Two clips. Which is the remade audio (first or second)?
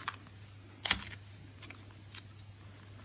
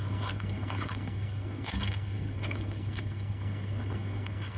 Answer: second